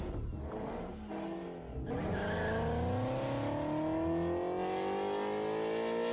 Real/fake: real